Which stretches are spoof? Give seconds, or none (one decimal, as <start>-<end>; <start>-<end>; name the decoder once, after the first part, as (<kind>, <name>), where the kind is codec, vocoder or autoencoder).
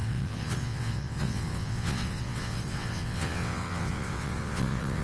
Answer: 0.0-5.0 (vocoder, WaveNeXt)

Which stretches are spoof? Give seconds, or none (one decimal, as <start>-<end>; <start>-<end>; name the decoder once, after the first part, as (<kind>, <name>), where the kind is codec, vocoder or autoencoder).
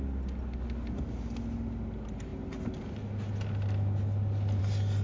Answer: none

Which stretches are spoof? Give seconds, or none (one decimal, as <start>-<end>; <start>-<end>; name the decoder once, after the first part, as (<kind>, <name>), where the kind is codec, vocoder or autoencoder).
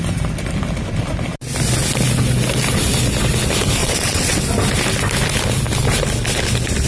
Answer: 3.8-4.4 (vocoder, WaveNeXt)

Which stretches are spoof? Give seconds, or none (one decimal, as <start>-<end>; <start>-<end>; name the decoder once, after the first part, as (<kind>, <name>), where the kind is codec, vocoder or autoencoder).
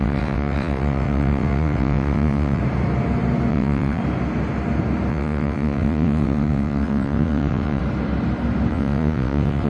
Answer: 0.0-2.6 (vocoder, WaveNeXt); 3.5-4.0; 5.1-7.8; 8.7-9.7